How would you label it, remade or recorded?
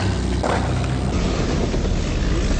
recorded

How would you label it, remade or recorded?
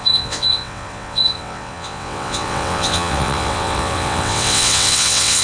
remade